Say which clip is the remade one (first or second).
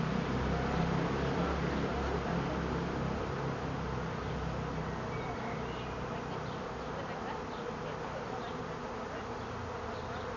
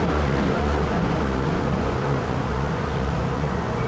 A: second